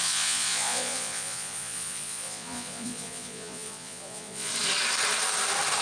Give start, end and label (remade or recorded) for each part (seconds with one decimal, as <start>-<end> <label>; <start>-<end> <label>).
0.0-4.5 remade; 4.5-5.8 recorded